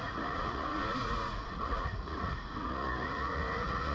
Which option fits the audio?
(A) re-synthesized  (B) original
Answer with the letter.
A